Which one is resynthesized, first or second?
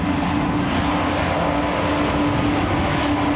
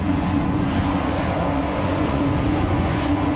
second